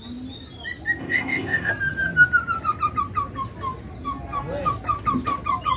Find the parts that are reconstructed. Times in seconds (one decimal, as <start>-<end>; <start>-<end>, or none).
1.0-1.7